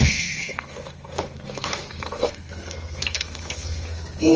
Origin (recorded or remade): remade